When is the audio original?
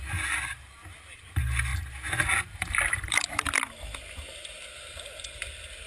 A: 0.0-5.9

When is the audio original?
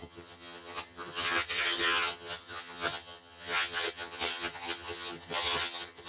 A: none